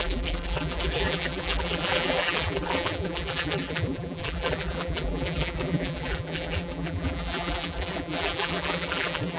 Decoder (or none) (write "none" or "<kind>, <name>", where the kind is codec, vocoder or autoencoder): vocoder, BigVGAN v2